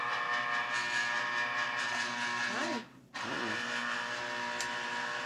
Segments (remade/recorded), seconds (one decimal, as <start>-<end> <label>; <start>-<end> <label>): 0.0-5.3 recorded